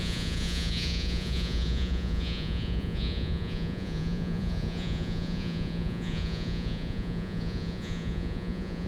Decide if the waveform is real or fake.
fake